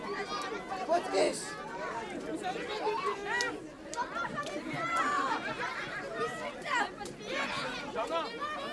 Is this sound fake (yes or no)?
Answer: no